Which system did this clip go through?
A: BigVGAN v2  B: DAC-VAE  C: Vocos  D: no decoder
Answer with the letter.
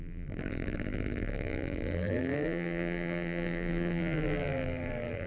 A